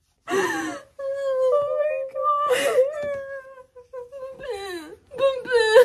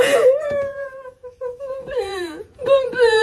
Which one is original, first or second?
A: first